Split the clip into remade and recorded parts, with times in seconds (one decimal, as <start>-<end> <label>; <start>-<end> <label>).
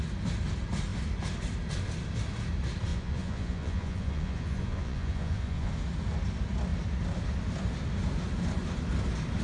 0.0-2.9 recorded; 2.9-5.7 remade; 5.7-9.4 recorded